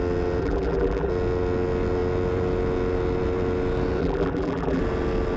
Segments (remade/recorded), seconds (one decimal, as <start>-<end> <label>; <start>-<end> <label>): 0.0-0.4 recorded; 0.4-1.1 remade; 1.1-4.0 recorded; 4.0-4.8 remade; 4.8-5.4 recorded